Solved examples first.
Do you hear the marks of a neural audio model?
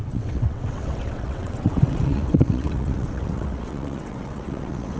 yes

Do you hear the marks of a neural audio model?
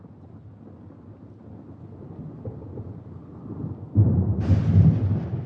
no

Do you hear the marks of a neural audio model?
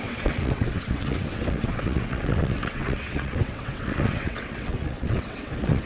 yes